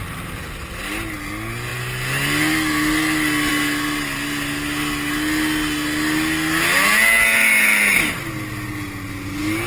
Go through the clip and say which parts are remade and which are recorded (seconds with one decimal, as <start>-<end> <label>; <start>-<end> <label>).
0.0-9.7 recorded